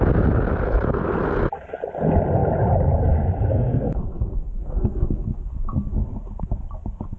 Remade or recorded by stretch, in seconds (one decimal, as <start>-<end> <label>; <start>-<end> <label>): 0.0-3.5 recorded; 3.5-5.5 remade; 5.5-7.2 recorded